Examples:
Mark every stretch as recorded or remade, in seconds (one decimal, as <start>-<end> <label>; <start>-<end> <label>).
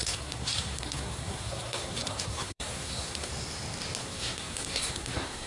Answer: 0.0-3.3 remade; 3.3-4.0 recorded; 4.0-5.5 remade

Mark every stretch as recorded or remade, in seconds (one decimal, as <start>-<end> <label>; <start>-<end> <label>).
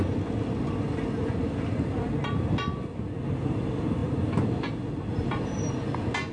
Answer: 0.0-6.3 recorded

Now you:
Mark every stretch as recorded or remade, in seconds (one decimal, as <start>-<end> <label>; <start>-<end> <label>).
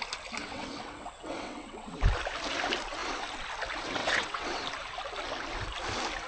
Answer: 0.0-0.4 recorded; 0.4-1.9 remade; 1.9-4.0 recorded; 4.0-4.6 remade; 4.6-6.3 recorded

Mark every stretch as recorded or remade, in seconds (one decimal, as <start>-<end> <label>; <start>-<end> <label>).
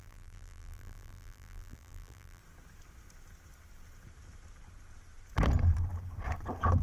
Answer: 0.0-2.4 remade; 2.4-6.8 recorded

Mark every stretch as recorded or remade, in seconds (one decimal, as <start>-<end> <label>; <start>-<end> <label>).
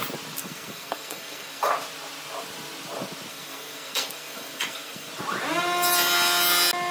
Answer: 0.0-0.4 recorded; 0.4-1.7 remade; 1.7-3.3 recorded; 3.3-5.1 remade; 5.1-6.9 recorded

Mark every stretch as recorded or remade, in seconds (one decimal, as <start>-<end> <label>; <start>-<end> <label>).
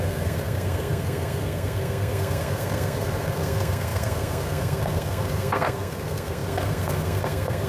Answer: 0.0-7.7 remade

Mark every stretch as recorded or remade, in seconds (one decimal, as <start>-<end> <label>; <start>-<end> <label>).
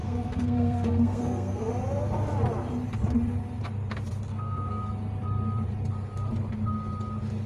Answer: 0.0-1.7 remade; 1.7-4.3 recorded; 4.3-4.8 remade; 4.8-7.5 recorded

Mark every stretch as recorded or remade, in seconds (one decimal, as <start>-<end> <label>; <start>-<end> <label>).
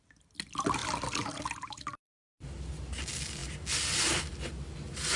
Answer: 0.0-5.2 recorded